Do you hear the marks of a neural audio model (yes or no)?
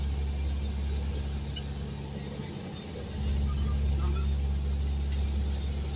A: no